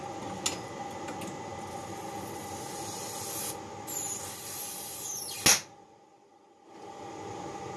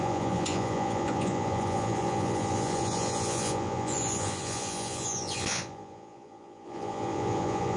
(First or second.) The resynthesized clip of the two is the second